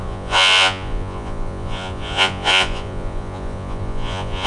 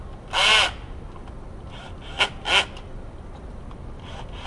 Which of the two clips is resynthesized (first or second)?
first